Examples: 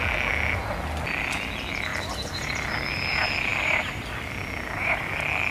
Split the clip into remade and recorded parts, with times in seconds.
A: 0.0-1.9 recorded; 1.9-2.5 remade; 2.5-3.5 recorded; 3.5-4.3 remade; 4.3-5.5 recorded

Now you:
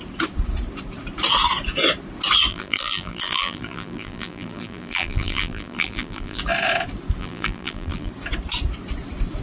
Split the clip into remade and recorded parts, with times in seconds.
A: 0.0-2.5 recorded; 2.5-6.4 remade; 6.4-7.2 recorded; 7.2-8.1 remade; 8.1-9.4 recorded